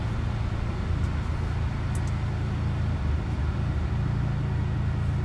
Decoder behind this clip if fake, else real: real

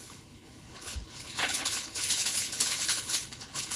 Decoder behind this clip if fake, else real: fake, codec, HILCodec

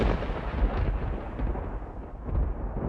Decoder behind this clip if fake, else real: real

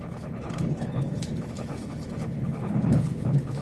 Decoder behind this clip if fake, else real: fake, codec, HILCodec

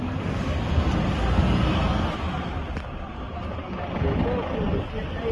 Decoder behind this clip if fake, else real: real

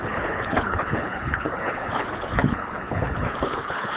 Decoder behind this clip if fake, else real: fake, codec, HILCodec